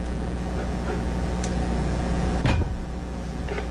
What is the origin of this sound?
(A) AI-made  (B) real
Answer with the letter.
B